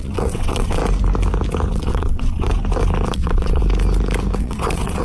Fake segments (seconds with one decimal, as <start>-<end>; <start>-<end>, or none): 0.0-0.8; 1.7-2.5; 3.1-3.6; 4.4-5.0